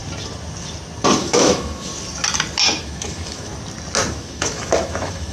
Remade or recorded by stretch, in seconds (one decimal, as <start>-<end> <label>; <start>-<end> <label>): 0.0-1.2 recorded; 1.2-1.9 remade; 1.9-2.8 recorded; 2.8-3.5 remade; 3.5-4.1 recorded; 4.1-5.3 remade